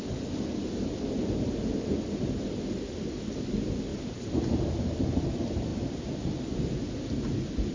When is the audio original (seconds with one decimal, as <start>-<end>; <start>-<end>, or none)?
0.0-3.9; 4.6-5.7; 6.3-7.7